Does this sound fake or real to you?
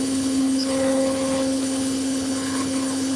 fake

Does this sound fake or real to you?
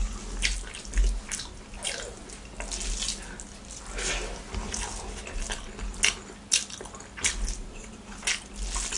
real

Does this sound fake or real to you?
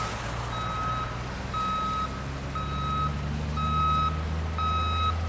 real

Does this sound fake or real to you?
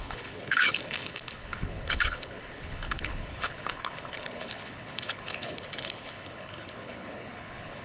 fake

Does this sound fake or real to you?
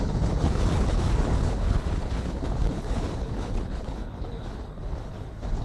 fake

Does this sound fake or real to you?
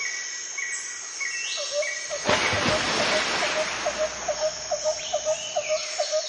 real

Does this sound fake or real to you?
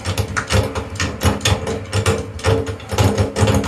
real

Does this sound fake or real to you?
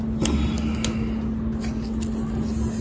real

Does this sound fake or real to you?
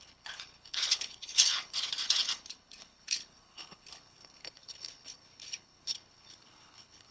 fake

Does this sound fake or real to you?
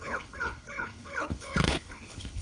fake